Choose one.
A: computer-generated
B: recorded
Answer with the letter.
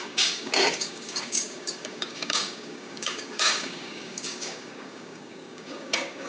A